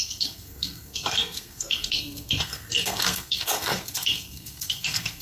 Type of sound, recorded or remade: remade